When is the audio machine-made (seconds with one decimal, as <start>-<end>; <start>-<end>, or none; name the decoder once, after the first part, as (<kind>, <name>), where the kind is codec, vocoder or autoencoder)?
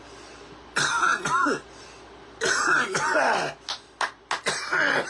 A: none